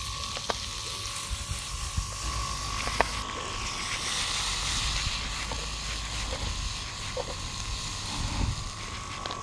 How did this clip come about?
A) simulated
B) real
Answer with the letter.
B